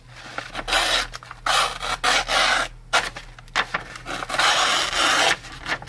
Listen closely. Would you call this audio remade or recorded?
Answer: recorded